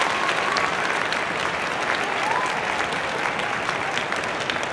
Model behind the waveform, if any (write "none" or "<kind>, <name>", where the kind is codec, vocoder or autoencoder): none